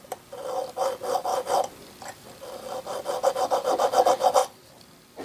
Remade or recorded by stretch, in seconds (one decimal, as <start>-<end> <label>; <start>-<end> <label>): 0.0-1.3 recorded; 1.3-3.3 remade; 3.3-4.4 recorded; 4.4-5.2 remade